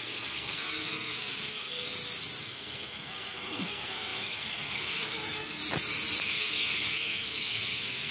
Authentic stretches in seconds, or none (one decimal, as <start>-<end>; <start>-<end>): 1.9-2.4; 5.6-6.2